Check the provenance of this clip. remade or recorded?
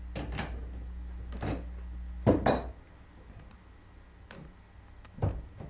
recorded